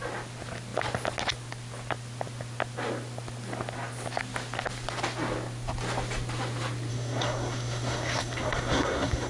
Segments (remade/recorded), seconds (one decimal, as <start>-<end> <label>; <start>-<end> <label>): 0.0-6.9 recorded; 6.9-9.3 remade